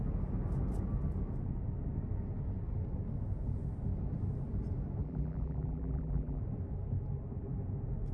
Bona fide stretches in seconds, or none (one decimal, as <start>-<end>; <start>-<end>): 0.0-5.0; 6.4-8.1